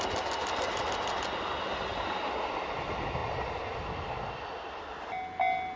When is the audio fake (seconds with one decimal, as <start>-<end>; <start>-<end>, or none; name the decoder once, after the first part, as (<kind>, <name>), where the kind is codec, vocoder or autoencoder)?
none